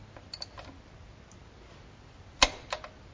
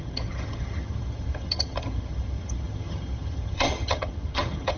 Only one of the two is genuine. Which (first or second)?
first